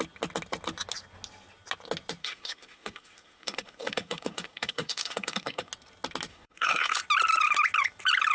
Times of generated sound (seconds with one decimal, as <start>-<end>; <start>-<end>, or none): 2.2-5.7; 6.3-7.0